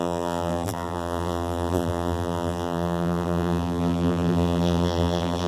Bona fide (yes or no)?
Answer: no